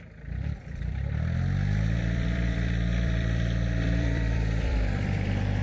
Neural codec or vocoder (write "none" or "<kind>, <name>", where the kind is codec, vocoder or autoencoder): vocoder, BigVGAN v2